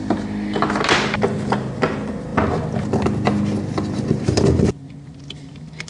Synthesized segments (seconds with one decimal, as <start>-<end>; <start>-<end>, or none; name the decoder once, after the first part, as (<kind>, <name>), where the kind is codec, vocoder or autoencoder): none